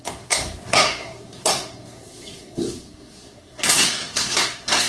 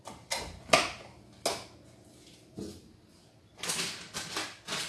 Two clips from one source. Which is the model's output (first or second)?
first